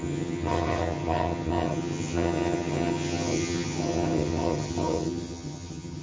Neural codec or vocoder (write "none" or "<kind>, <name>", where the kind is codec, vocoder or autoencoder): vocoder, HiFi-GAN